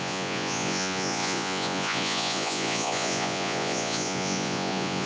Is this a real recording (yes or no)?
no